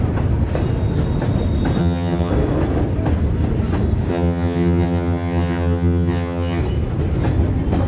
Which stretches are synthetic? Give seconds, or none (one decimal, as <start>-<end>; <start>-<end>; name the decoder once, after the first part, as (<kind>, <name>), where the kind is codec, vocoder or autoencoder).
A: 1.8-2.3 (vocoder, HiFi-GAN); 4.1-6.6